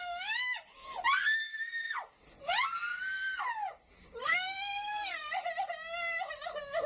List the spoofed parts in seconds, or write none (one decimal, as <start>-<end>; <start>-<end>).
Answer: 4.2-5.3